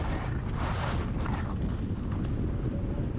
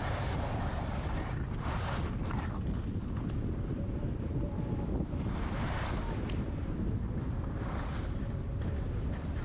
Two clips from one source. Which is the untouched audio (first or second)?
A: first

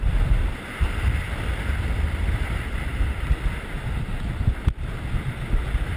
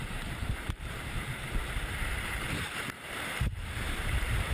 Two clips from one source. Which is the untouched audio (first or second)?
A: first